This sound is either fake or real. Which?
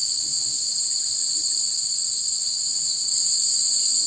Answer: real